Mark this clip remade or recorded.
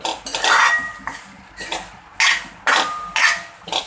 recorded